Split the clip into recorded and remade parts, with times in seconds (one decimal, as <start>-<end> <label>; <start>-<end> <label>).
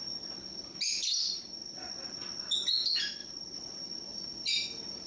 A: 0.0-1.6 recorded; 1.6-2.4 remade; 2.4-3.2 recorded; 3.2-3.8 remade; 3.8-5.1 recorded